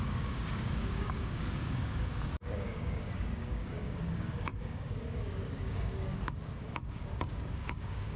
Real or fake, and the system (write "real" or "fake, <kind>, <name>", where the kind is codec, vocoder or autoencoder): fake, codec, DAC